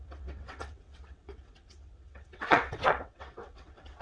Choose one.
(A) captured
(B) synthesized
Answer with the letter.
B